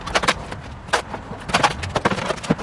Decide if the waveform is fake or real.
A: fake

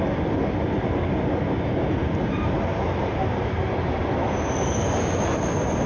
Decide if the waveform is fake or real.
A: real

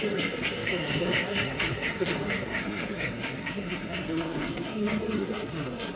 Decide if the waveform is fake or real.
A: fake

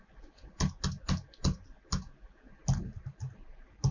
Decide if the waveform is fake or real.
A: real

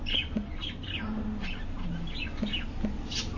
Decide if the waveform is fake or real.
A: real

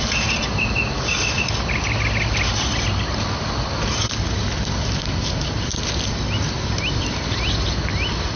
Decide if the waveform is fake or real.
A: real